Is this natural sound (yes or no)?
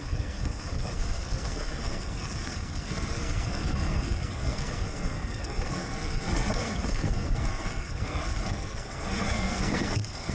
no